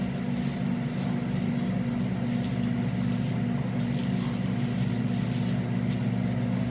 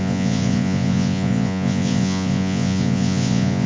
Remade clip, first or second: second